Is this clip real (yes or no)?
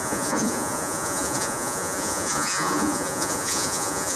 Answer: no